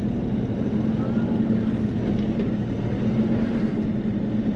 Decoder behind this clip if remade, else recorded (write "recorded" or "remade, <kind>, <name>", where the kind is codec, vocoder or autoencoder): recorded